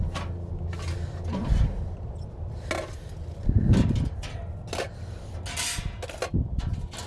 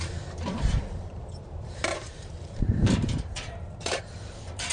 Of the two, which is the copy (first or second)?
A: second